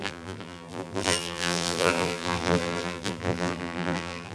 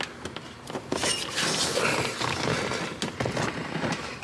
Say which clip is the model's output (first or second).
first